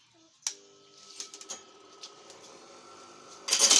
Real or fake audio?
real